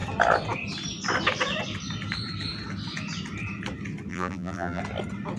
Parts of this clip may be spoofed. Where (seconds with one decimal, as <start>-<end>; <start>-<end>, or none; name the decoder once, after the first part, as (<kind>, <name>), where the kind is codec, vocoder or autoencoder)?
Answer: 4.1-4.8 (vocoder, BigVGAN v2)

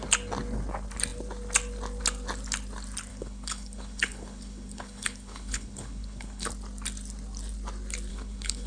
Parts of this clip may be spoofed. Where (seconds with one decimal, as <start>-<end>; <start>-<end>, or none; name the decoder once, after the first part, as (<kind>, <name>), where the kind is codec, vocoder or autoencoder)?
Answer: 3.1-6.5 (codec, HILCodec); 8.1-8.7

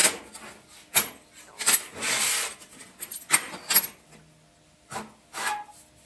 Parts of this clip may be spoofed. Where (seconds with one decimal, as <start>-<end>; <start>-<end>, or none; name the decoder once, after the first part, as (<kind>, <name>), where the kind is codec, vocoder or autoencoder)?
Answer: none

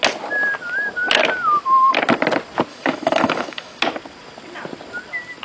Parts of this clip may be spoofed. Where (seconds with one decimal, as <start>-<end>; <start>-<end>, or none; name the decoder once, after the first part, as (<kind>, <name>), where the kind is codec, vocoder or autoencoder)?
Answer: 2.7-3.8 (autoencoder, DAC-VAE)

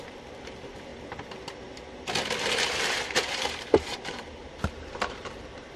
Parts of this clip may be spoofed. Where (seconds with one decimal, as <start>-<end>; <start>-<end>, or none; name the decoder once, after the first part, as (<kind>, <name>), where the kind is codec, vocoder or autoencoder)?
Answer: 0.0-0.9 (vocoder, BigVGAN v2); 2.5-5.8

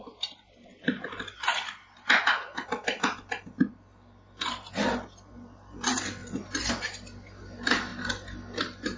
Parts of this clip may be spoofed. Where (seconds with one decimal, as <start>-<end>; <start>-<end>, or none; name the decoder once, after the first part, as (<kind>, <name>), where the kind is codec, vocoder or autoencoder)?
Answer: none